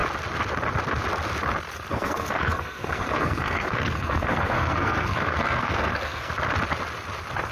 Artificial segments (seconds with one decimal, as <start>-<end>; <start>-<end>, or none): 1.9-6.3